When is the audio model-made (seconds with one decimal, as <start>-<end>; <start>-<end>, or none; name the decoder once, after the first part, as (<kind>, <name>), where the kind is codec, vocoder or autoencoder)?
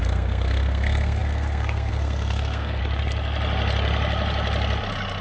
0.0-2.8 (codec, SNAC)